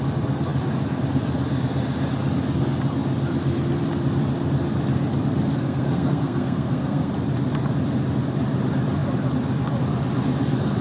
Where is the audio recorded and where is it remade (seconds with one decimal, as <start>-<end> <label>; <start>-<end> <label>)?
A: 0.0-5.5 recorded; 5.5-7.1 remade; 7.1-10.8 recorded